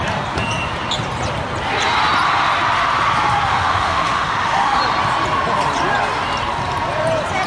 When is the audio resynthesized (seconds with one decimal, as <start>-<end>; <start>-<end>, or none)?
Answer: 3.5-4.8